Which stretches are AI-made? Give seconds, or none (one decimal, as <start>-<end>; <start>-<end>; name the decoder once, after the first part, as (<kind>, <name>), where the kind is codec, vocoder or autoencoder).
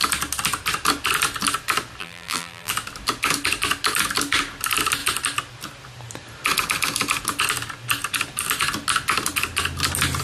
2.0-2.7 (vocoder, BigVGAN v2)